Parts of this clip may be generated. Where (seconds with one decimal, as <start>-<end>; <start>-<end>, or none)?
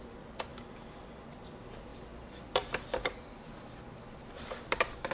1.9-5.1